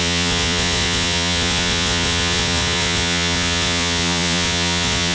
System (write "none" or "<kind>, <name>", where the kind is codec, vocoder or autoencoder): vocoder, Vocos